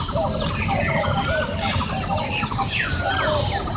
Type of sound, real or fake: real